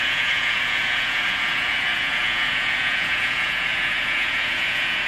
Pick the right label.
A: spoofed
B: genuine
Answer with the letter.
A